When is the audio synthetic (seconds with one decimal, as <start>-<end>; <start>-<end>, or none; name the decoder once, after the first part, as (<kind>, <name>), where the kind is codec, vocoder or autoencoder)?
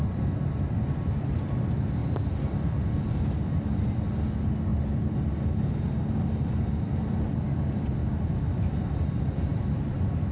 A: 9.5-10.3 (vocoder, BigVGAN v2)